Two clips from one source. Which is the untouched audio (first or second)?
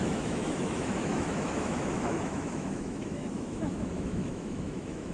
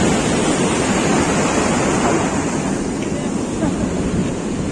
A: second